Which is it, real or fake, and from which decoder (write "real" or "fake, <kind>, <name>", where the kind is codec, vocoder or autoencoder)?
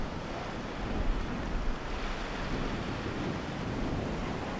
real